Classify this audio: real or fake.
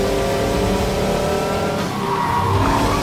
real